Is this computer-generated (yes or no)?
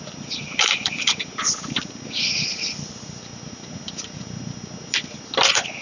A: no